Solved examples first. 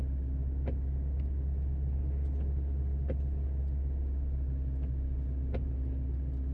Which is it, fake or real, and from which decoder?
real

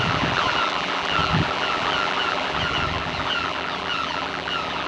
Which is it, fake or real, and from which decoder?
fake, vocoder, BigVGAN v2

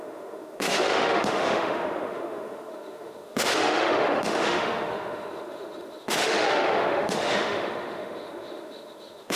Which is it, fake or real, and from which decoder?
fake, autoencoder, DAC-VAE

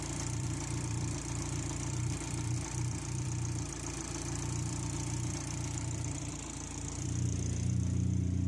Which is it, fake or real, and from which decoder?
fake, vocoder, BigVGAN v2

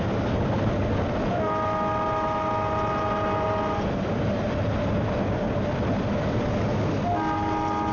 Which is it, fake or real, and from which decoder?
real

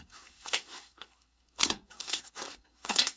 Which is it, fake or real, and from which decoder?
fake, codec, SNAC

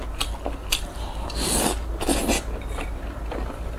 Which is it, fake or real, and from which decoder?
real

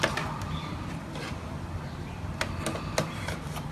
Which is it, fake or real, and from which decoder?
real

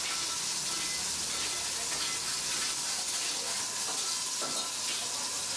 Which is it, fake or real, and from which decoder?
real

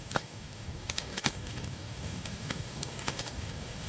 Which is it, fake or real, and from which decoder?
fake, codec, DAC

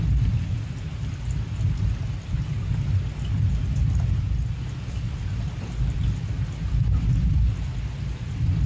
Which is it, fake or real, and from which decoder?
real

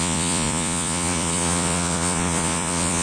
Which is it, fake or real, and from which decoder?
fake, vocoder, Vocos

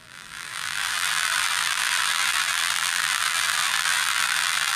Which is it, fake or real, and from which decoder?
fake, vocoder, BigVGAN v2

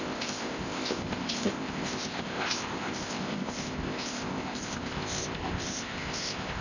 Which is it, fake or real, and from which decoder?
fake, codec, ZipCodec